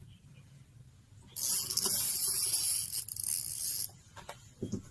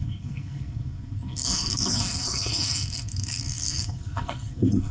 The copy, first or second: second